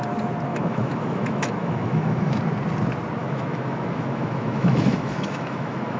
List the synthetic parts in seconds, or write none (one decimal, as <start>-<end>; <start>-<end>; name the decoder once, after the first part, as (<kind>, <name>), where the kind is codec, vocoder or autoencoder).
0.5-2.4 (autoencoder, DAC-VAE); 3.2-6.0

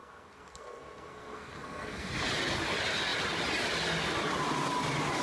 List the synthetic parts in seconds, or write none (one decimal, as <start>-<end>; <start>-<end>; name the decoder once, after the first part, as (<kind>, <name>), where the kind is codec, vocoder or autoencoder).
0.0-2.1 (codec, SNAC)